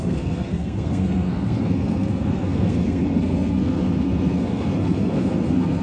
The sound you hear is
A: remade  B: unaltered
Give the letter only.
A